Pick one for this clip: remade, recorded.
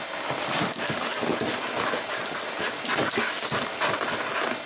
recorded